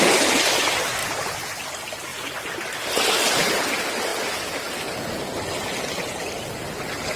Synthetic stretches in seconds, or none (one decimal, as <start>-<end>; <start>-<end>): none